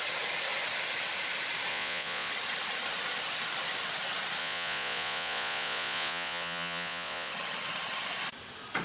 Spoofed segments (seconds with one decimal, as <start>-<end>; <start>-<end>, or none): 1.7-2.3; 4.4-7.3